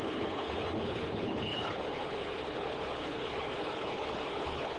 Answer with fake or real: fake